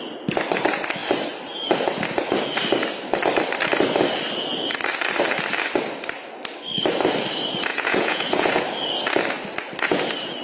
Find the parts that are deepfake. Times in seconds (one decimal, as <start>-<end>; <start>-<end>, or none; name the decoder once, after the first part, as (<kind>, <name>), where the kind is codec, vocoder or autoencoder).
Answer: 7.7-8.6 (vocoder, Vocos)